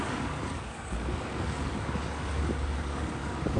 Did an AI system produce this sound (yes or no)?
yes